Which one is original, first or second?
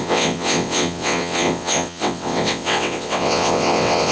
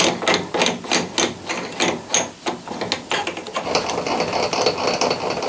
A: second